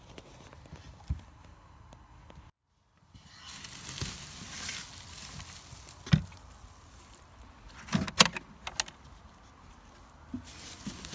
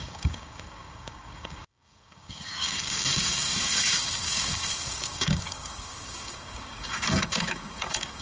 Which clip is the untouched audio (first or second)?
first